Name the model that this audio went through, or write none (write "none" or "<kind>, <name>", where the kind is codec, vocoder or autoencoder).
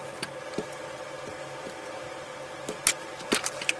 none